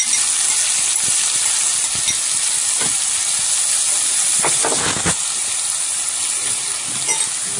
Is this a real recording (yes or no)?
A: yes